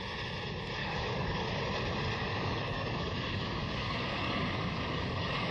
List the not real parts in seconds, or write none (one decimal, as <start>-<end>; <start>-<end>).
0.8-1.6; 2.2-5.5